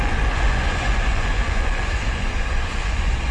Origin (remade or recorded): remade